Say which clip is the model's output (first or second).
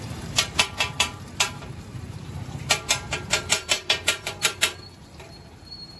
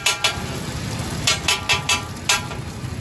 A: first